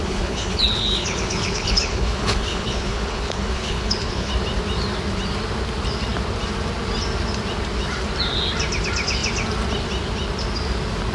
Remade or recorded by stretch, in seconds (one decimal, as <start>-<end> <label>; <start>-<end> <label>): 0.0-4.3 remade; 4.3-11.1 recorded